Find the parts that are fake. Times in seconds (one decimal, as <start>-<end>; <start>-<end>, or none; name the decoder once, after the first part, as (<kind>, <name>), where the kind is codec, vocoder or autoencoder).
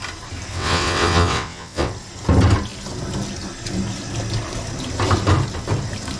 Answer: 0.5-1.9 (vocoder, WaveNeXt)